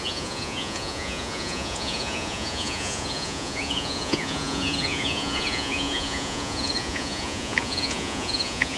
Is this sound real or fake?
fake